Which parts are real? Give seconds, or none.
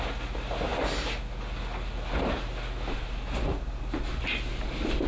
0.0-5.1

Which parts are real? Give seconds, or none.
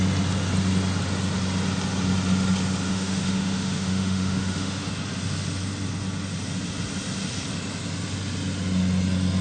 0.0-2.9; 4.9-9.4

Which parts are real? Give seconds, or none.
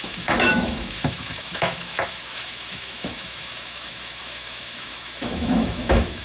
none